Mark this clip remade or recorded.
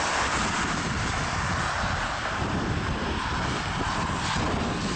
recorded